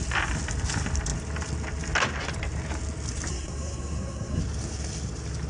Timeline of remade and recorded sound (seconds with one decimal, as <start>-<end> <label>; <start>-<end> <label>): 0.0-3.3 recorded; 3.3-4.4 remade; 4.4-5.5 recorded